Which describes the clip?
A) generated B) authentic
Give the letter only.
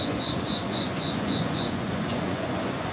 A